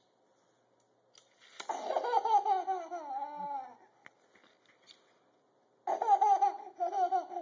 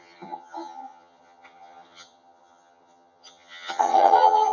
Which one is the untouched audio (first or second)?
first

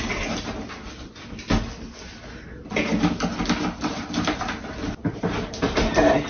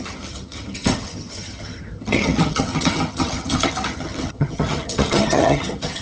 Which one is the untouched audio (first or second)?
first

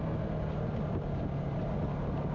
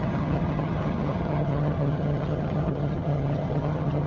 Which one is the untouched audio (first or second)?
first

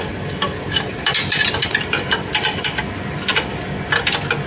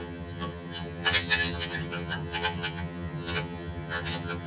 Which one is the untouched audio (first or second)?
first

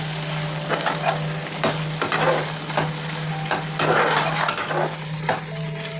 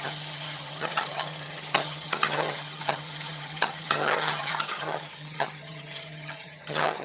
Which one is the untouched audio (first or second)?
first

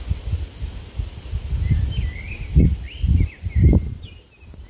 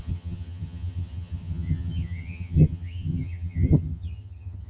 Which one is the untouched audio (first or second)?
first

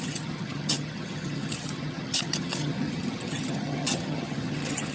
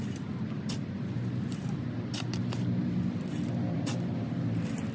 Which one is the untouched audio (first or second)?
second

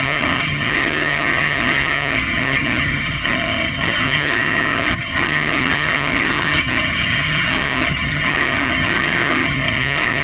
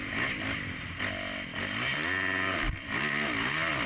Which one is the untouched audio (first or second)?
second